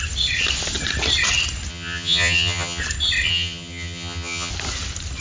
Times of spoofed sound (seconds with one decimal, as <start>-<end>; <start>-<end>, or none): 1.7-2.8; 3.3-4.5